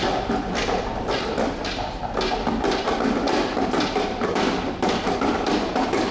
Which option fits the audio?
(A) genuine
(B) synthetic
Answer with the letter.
A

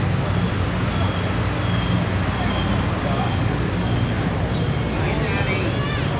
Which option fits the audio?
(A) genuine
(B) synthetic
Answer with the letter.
A